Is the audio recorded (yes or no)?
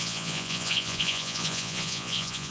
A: no